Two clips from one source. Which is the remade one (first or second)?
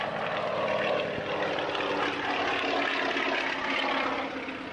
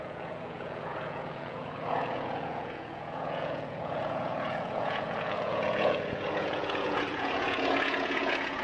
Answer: second